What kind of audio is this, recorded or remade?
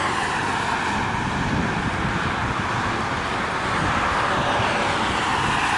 recorded